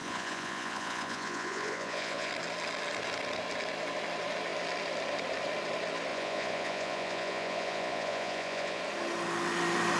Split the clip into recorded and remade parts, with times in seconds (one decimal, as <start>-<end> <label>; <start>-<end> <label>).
0.0-2.3 remade; 2.3-6.1 recorded; 6.1-8.8 remade; 8.8-10.0 recorded